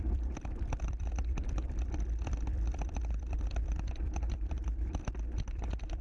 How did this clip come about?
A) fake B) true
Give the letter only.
A